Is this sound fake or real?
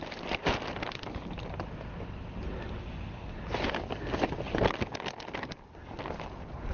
real